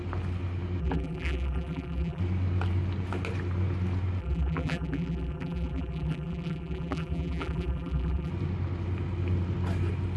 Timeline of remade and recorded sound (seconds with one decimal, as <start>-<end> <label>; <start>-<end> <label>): 0.0-0.8 recorded; 0.8-2.2 remade; 2.2-4.2 recorded; 4.2-8.3 remade; 8.3-10.2 recorded